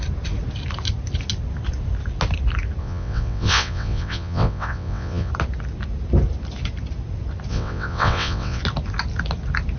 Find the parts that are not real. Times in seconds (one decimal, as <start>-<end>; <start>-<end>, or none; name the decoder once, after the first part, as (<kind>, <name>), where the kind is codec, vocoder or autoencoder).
2.8-5.3 (vocoder, WaveNeXt); 7.5-8.6